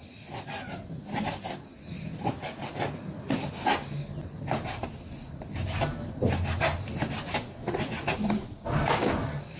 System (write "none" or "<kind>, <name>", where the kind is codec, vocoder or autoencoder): none